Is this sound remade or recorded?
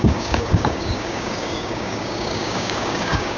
remade